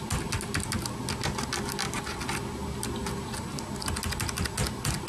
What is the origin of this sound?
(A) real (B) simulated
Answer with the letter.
A